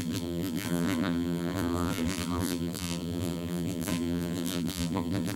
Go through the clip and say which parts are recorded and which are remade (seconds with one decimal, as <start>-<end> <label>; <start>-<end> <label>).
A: 0.0-5.4 remade